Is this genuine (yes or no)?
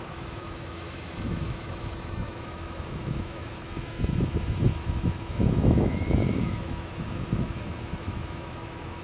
no